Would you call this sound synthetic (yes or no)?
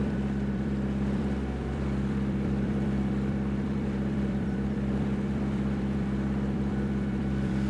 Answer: yes